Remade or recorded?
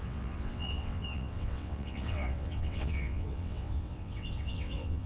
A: remade